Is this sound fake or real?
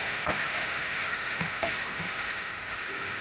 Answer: fake